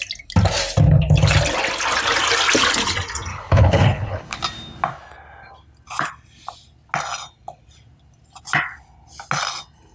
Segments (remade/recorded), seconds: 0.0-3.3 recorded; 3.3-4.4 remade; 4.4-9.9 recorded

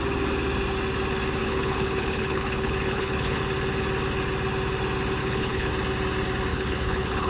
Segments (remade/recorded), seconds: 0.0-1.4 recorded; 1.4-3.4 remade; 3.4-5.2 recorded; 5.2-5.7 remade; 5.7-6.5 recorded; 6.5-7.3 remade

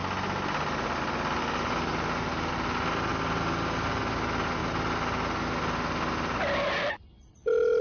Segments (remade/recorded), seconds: 0.0-7.8 recorded

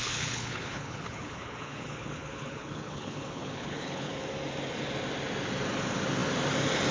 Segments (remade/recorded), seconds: 0.0-4.1 remade; 4.1-6.9 recorded

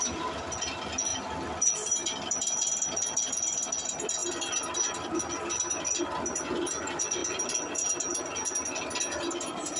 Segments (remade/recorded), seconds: 0.0-9.8 recorded